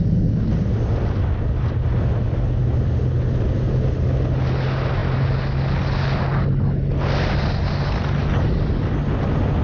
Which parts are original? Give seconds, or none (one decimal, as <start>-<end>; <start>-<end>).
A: 0.0-9.6